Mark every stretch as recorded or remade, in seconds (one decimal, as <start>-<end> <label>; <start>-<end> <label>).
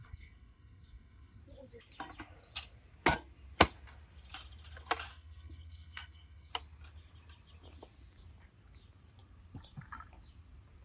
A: 0.0-1.4 remade; 1.4-5.1 recorded; 5.1-6.5 remade; 6.5-10.8 recorded